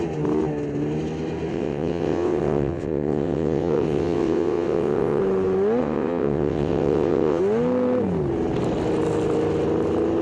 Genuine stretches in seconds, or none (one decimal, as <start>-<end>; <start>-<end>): 0.0-1.5; 5.2-5.8; 7.4-10.2